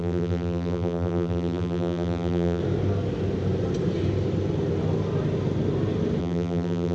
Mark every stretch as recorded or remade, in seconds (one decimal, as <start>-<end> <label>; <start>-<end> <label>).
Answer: 0.0-2.6 remade; 2.6-6.2 recorded; 6.2-6.9 remade